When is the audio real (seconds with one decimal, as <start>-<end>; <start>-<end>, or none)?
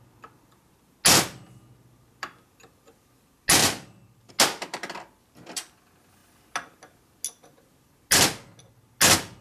0.0-3.6; 4.3-9.4